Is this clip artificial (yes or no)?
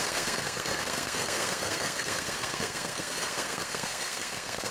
yes